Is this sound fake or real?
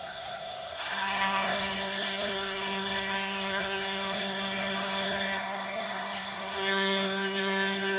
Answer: fake